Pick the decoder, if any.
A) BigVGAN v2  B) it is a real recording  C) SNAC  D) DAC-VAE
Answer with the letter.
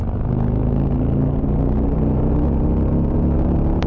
B